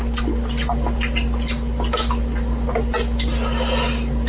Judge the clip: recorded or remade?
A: recorded